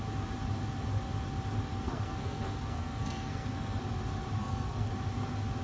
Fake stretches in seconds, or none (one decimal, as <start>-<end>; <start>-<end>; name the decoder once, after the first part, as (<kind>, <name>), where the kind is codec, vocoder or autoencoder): 1.7-3.8 (codec, SNAC); 4.4-4.9